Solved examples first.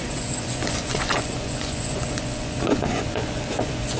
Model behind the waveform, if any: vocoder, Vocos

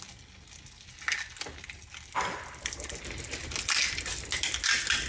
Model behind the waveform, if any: none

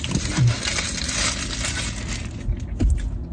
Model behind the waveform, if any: none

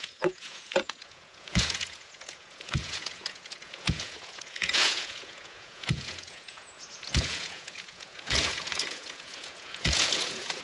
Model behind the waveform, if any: vocoder, Vocos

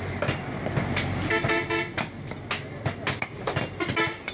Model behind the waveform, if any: none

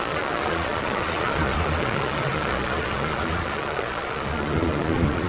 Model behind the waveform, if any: vocoder, Vocos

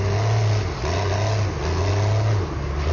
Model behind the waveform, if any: none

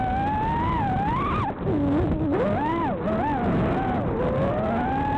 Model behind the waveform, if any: none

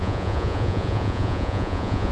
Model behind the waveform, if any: vocoder, Vocos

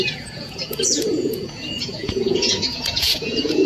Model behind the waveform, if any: vocoder, Vocos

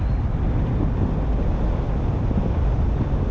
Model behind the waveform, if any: none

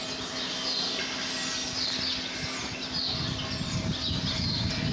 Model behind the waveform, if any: none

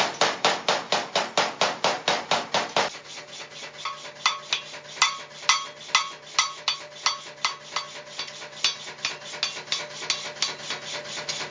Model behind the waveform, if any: none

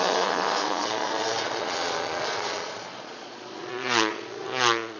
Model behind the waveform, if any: vocoder, Vocos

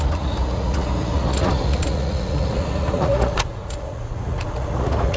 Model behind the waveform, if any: vocoder, Vocos